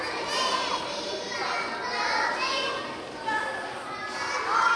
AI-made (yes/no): no